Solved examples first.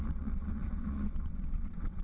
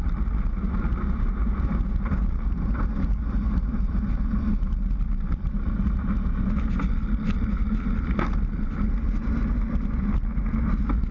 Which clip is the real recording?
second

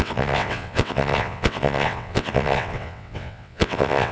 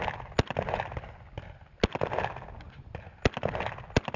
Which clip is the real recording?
second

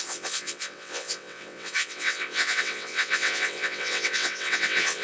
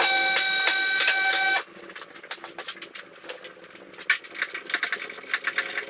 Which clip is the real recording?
second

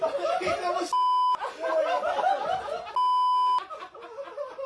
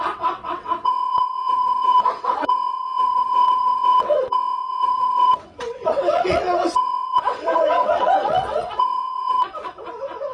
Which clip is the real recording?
first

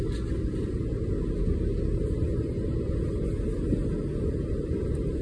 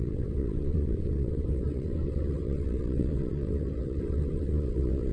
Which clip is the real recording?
first